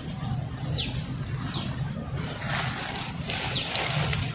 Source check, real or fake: real